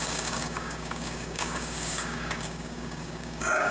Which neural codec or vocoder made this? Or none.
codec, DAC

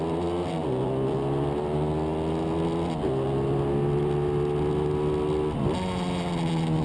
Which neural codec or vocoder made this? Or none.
none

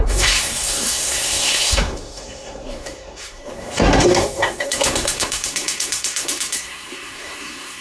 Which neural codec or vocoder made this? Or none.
codec, SNAC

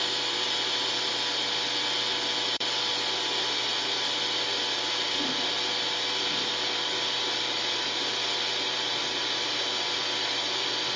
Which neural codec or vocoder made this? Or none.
none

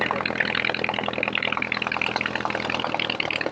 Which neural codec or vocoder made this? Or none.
none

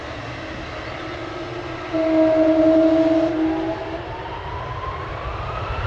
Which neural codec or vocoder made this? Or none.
none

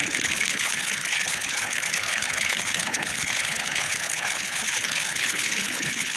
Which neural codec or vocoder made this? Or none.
codec, HILCodec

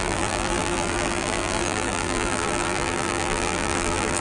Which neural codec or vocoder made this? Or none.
vocoder, BigVGAN v2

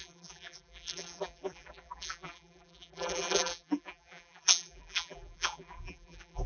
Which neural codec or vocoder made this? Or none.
vocoder, BigVGAN v2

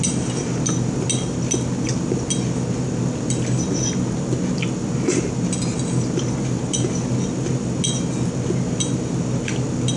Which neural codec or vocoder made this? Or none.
none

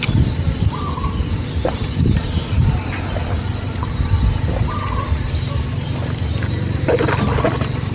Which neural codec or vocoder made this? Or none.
none